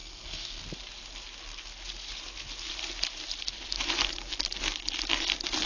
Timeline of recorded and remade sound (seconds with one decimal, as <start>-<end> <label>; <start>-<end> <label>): 0.0-0.6 remade; 0.6-5.7 recorded